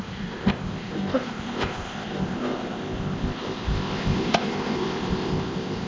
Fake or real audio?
fake